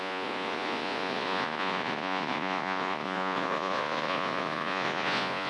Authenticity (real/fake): fake